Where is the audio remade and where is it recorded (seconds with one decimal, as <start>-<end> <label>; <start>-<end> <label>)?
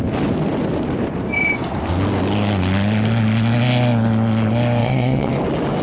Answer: 0.0-4.8 recorded; 4.8-5.3 remade; 5.3-5.8 recorded